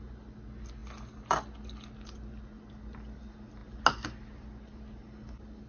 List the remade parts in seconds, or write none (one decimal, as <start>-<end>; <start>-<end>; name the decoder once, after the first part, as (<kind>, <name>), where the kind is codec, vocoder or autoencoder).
none